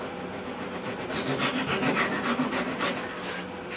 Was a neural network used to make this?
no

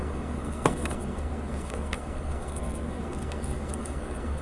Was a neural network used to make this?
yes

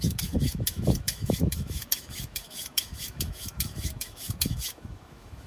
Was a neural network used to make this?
yes